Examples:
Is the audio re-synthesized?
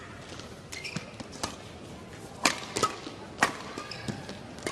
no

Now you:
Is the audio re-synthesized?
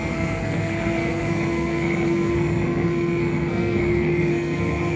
yes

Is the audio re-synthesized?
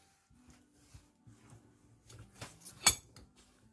no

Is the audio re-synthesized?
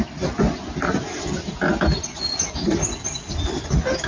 no